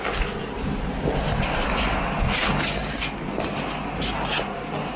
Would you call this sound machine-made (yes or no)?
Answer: no